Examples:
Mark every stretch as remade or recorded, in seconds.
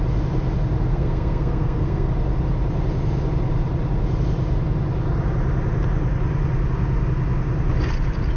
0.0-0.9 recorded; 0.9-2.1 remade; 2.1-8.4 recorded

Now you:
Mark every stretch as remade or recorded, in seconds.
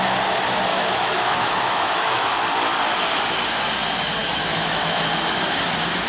0.0-0.7 recorded; 0.7-2.4 remade; 2.4-4.2 recorded; 4.2-5.0 remade; 5.0-6.1 recorded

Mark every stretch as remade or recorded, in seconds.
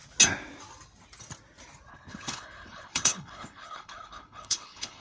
0.0-1.9 recorded; 1.9-5.0 remade